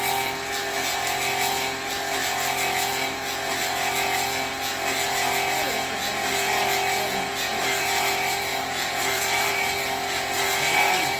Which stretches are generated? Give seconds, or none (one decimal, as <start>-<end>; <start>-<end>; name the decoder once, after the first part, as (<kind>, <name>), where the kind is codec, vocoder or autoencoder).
8.5-9.5 (vocoder, BigVGAN v2)